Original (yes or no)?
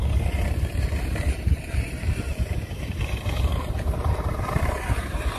no